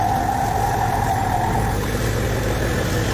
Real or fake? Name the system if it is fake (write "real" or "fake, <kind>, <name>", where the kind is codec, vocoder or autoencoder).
fake, vocoder, BigVGAN v2